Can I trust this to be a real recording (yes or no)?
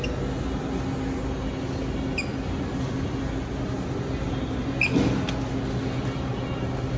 yes